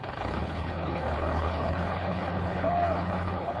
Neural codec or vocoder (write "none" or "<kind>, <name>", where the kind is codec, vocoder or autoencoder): codec, HILCodec